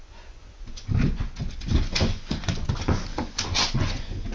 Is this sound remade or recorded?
remade